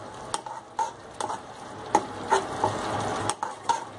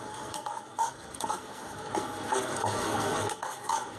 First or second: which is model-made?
second